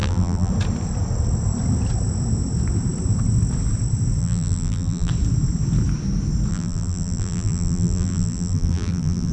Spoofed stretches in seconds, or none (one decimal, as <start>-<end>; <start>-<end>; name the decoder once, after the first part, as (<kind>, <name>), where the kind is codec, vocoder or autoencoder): 0.0-0.5 (vocoder, BigVGAN v2); 4.2-5.1; 6.5-9.3